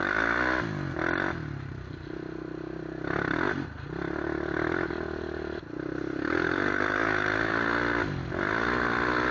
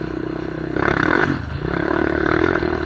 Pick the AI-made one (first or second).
second